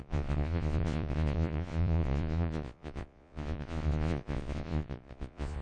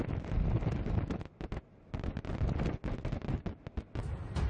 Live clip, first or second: second